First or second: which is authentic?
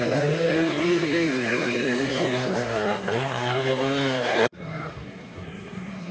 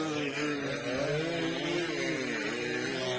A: second